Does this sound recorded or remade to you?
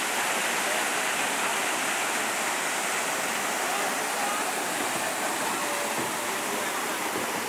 recorded